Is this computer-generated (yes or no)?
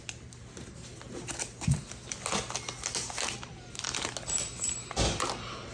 no